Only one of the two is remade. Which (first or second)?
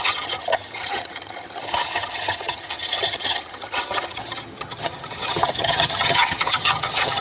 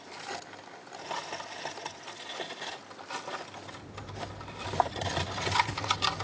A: first